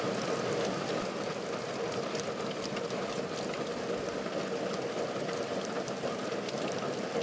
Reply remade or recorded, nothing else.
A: recorded